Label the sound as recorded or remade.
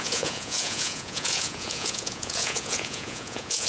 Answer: remade